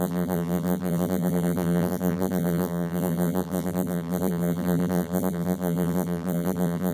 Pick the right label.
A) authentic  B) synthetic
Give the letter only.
B